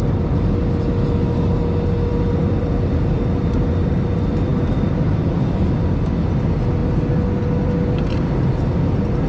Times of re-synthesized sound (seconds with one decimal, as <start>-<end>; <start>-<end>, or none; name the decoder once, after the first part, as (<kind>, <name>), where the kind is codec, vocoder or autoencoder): 2.1-3.2 (vocoder, BigVGAN v2); 4.5-5.8